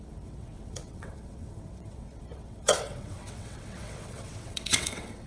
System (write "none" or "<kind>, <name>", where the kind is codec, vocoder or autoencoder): vocoder, WaveNeXt